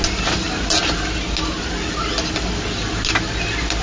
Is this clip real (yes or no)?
yes